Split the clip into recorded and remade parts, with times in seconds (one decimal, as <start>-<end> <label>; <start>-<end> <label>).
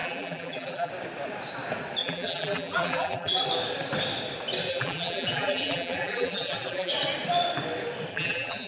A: 0.0-0.9 remade; 0.9-2.0 recorded; 2.0-3.4 remade; 3.4-4.7 recorded; 4.7-6.9 remade; 6.9-8.1 recorded; 8.1-8.7 remade